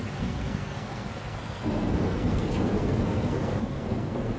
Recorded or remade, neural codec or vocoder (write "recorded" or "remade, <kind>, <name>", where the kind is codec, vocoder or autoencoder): remade, codec, SNAC